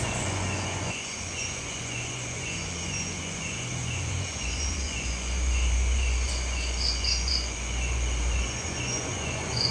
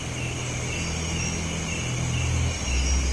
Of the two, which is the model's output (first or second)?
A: first